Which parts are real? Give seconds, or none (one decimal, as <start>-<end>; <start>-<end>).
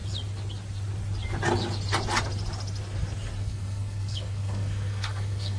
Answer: 0.0-3.4